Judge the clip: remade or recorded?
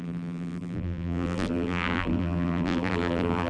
remade